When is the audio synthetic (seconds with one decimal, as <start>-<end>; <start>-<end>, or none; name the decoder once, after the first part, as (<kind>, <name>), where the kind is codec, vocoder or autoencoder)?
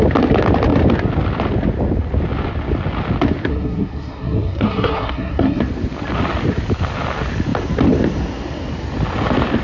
3.5-5.6 (codec, SNAC)